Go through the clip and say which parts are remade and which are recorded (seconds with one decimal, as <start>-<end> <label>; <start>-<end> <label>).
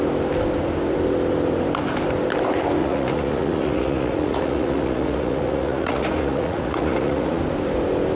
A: 0.0-2.8 recorded; 2.8-7.4 remade; 7.4-8.2 recorded